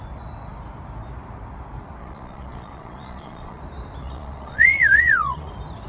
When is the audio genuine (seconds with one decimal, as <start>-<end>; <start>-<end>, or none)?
0.0-2.0; 3.6-4.0; 5.5-5.9